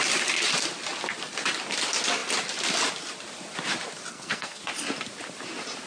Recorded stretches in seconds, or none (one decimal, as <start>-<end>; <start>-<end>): 0.0-4.1; 4.6-5.9